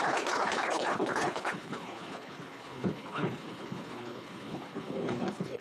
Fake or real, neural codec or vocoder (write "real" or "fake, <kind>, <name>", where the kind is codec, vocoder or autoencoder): fake, codec, HILCodec